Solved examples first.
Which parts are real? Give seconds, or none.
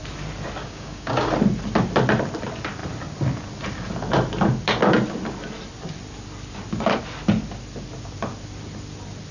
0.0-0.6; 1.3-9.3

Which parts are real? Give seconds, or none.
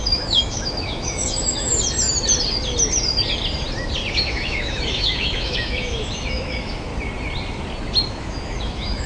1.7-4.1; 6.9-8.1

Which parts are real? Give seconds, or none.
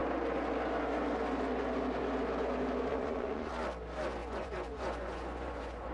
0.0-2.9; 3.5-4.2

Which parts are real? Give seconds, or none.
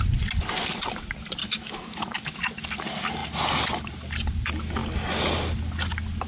0.0-1.4; 2.4-6.3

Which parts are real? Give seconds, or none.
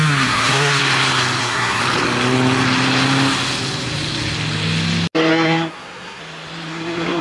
0.8-1.4; 1.8-5.3; 6.2-6.7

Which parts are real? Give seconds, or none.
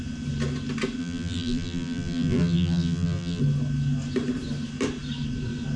0.0-1.0; 3.4-5.8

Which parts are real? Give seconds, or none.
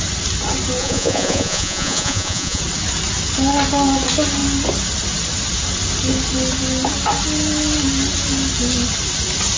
0.0-0.8; 2.6-9.6